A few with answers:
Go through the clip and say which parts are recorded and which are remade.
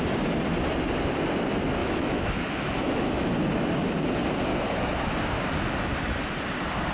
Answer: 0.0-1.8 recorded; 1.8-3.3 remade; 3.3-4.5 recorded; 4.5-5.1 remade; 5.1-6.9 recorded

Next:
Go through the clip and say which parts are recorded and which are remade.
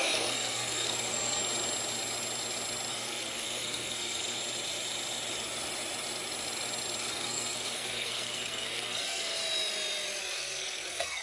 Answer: 0.0-1.4 remade; 1.4-2.9 recorded; 2.9-4.4 remade; 4.4-7.0 recorded; 7.0-9.4 remade; 9.4-10.2 recorded; 10.2-11.2 remade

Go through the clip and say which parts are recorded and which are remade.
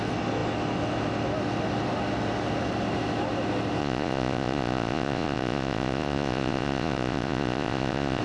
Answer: 0.0-3.8 recorded; 3.8-8.2 remade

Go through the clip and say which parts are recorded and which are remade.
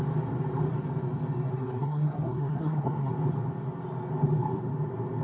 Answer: 0.0-1.5 recorded; 1.5-3.1 remade; 3.1-5.2 recorded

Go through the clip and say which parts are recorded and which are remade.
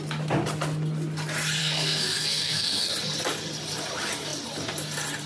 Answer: 0.0-1.6 recorded; 1.6-2.9 remade; 2.9-5.3 recorded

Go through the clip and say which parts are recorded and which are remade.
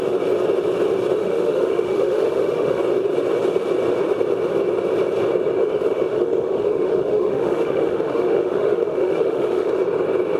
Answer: 0.0-1.2 recorded; 1.2-2.8 remade; 2.8-5.6 recorded; 5.6-9.7 remade; 9.7-10.4 recorded